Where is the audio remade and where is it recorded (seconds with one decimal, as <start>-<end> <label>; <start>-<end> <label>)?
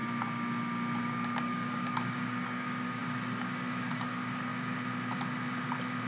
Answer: 0.0-1.0 recorded; 1.0-4.5 remade; 4.5-6.1 recorded